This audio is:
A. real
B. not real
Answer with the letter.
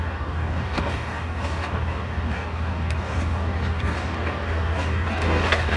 B